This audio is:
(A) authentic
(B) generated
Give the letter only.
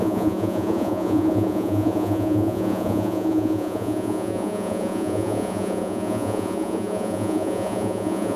B